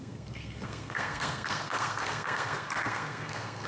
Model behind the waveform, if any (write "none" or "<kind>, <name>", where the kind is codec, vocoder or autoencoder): codec, SNAC